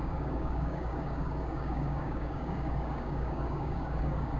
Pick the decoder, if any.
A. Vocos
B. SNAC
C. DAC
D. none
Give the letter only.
C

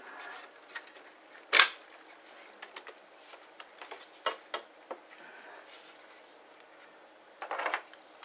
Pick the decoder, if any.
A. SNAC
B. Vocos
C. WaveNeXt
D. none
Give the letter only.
D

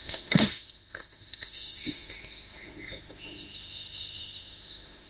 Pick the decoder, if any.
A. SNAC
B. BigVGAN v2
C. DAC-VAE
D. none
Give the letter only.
C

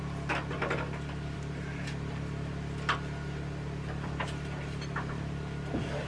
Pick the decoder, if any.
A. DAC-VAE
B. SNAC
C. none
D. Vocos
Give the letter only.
C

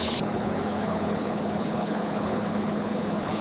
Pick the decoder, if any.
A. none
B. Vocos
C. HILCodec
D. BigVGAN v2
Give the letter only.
C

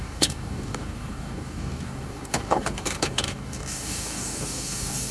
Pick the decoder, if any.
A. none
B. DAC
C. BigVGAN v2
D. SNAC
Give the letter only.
B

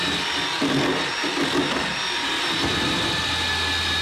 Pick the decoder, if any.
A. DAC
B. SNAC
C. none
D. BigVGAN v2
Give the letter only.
C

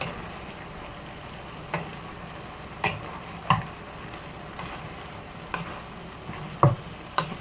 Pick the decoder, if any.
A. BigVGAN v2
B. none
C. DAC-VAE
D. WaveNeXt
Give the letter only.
B